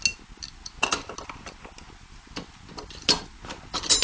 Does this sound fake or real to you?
real